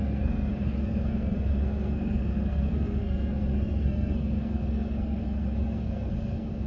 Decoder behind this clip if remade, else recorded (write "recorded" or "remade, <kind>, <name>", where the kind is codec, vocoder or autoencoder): remade, codec, SNAC